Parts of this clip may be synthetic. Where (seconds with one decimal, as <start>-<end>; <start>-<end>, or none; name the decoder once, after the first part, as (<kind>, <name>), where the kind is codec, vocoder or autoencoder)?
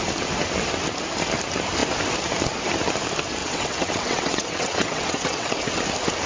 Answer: 3.4-5.8 (vocoder, WaveNeXt)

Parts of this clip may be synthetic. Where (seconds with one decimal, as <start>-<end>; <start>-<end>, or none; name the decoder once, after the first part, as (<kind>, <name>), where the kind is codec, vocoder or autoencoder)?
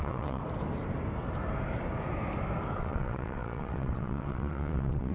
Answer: 0.0-0.4 (vocoder, WaveNeXt); 2.8-5.1